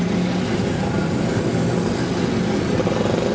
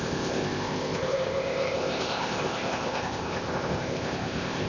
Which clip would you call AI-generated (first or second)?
second